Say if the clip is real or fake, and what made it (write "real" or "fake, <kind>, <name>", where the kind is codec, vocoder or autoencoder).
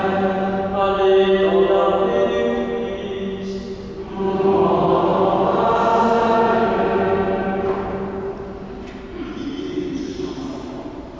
real